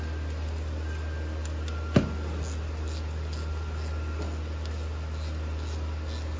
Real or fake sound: real